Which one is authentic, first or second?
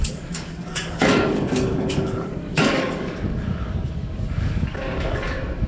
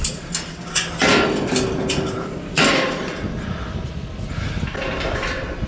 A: second